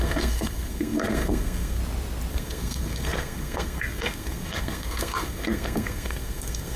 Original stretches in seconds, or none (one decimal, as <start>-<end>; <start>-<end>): 1.8-2.3